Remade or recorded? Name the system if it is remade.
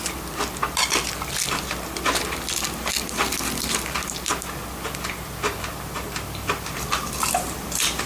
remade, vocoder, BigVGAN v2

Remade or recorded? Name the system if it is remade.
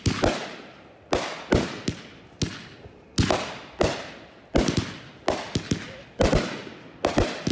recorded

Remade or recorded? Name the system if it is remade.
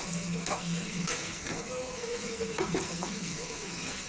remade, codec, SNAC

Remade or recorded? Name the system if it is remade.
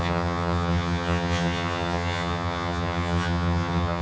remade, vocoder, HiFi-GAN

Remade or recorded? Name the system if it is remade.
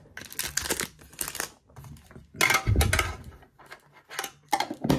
recorded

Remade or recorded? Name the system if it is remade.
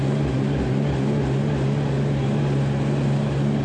recorded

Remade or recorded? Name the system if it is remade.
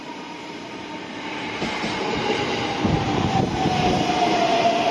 remade, vocoder, BigVGAN v2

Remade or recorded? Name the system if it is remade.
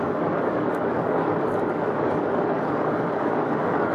remade, codec, DAC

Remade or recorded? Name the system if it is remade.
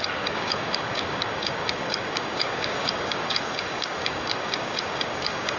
remade, codec, DAC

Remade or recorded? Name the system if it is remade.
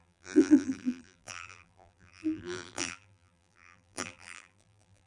remade, vocoder, BigVGAN v2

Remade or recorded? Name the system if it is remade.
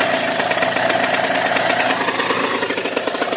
recorded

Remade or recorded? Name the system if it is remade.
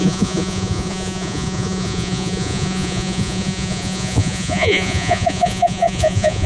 remade, vocoder, Vocos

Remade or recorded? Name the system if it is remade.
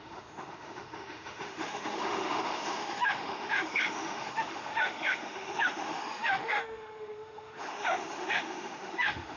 remade, autoencoder, DAC-VAE